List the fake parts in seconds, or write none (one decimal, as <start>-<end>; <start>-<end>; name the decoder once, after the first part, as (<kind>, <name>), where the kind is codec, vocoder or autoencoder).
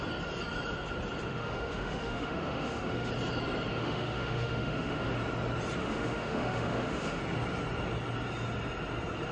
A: 1.3-3.1 (autoencoder, DAC-VAE); 3.7-5.1; 5.8-7.2